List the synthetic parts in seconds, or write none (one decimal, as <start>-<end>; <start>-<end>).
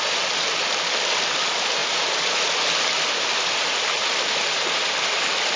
none